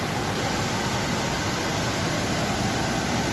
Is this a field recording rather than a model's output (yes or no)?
yes